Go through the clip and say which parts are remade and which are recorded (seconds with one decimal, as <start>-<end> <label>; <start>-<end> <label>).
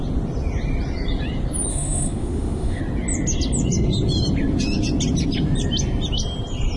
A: 0.0-1.7 recorded; 1.7-2.8 remade; 2.8-6.8 recorded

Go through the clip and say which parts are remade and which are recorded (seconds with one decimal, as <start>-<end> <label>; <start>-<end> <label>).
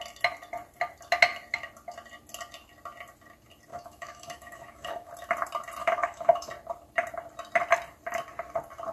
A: 0.0-3.7 recorded; 3.7-5.1 remade; 5.1-5.8 recorded; 5.8-6.5 remade; 6.5-8.9 recorded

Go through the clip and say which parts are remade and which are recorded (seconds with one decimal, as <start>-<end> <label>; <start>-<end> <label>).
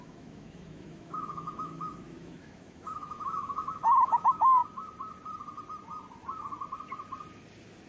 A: 0.0-4.6 remade; 4.6-7.9 recorded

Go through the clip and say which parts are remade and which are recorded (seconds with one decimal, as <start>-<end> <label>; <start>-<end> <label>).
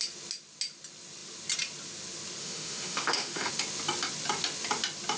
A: 0.0-2.4 recorded; 2.4-3.5 remade; 3.5-5.2 recorded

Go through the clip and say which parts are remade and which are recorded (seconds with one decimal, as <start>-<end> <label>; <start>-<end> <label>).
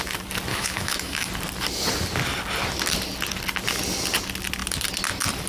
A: 0.0-0.5 recorded; 0.5-1.3 remade; 1.3-5.5 recorded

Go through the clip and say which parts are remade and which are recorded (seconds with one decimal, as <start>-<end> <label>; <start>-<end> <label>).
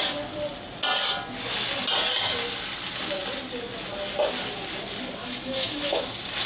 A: 0.0-5.2 recorded; 5.2-6.0 remade; 6.0-6.5 recorded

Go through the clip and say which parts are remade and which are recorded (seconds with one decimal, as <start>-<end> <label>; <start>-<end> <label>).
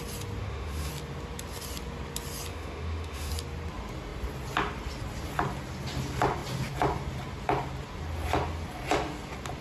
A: 0.0-0.4 recorded; 0.4-0.9 remade; 0.9-2.5 recorded; 2.5-3.3 remade; 3.3-9.6 recorded